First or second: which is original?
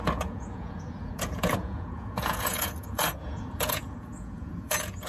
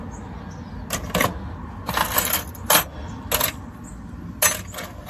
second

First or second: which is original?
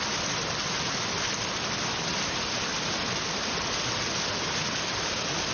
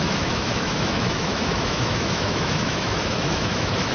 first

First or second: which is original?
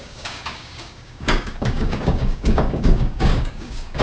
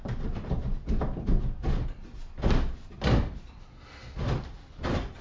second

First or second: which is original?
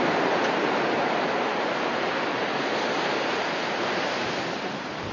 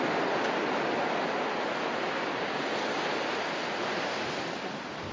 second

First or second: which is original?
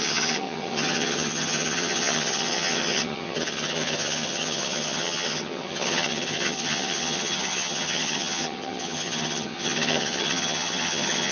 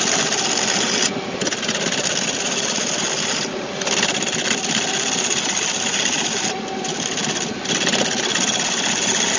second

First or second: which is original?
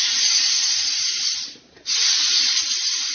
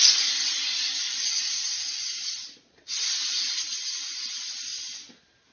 second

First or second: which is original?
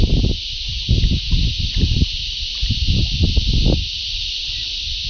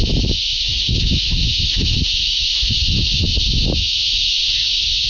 first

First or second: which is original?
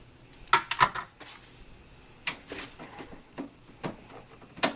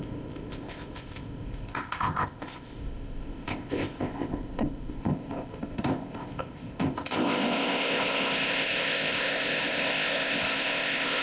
first